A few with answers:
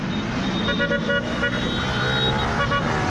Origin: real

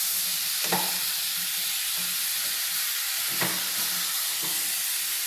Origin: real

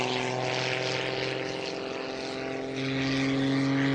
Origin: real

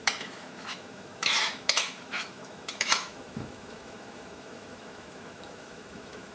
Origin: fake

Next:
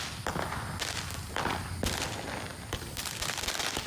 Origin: real